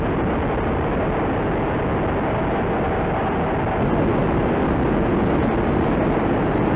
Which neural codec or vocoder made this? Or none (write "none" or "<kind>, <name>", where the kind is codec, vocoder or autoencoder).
none